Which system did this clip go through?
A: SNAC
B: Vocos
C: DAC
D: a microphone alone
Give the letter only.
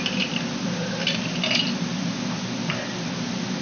D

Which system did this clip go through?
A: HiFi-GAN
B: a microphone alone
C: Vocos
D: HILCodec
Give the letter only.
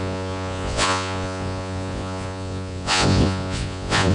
C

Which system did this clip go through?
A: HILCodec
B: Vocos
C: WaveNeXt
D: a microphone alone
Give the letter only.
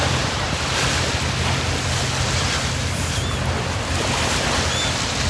D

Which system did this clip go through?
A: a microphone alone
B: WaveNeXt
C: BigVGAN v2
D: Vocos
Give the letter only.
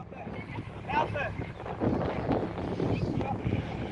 A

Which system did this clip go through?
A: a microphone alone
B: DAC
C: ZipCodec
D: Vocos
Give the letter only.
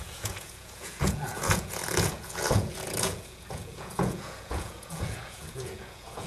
D